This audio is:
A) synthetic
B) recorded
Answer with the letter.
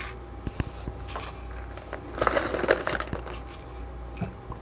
B